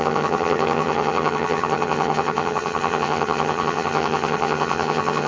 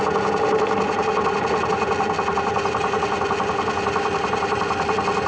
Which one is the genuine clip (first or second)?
second